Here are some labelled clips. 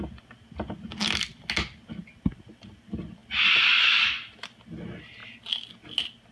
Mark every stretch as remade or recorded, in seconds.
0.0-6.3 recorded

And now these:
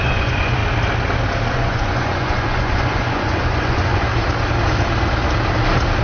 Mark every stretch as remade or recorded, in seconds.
0.0-0.6 remade; 0.6-1.5 recorded; 1.5-4.1 remade; 4.1-6.0 recorded

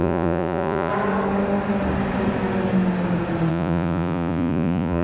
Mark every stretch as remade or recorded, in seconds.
0.0-0.9 remade; 0.9-3.5 recorded; 3.5-5.0 remade

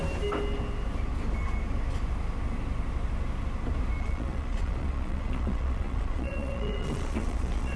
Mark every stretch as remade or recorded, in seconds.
0.0-4.0 recorded; 4.0-7.8 remade